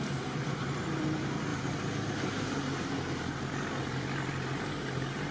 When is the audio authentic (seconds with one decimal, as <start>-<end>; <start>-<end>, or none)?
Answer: 1.5-3.8